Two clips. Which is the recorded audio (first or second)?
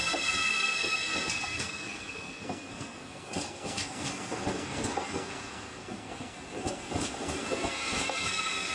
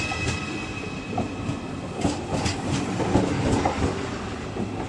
second